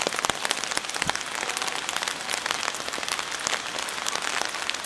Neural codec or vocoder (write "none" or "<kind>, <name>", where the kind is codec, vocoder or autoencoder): none